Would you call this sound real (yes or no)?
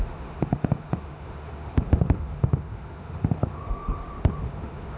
no